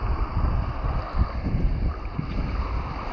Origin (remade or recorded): recorded